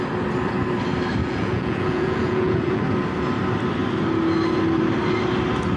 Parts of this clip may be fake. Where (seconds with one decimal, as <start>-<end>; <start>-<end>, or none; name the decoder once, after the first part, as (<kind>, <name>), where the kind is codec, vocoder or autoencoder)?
1.2-2.8 (vocoder, Vocos)